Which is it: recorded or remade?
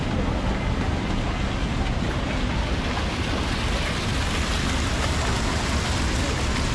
recorded